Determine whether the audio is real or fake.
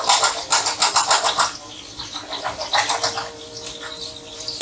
real